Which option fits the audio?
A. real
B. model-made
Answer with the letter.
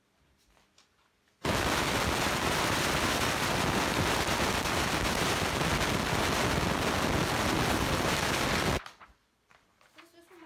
A